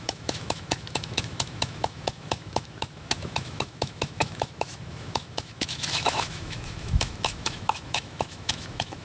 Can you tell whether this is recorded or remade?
remade